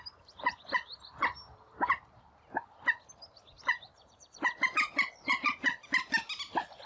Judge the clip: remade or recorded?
recorded